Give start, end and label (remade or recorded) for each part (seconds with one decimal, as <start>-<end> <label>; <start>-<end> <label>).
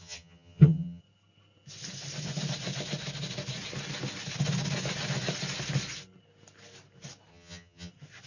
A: 0.0-1.0 remade; 1.0-7.3 recorded; 7.3-7.9 remade; 7.9-8.3 recorded